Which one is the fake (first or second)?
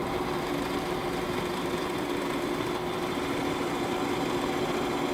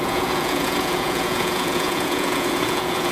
second